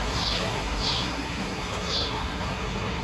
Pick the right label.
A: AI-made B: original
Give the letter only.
A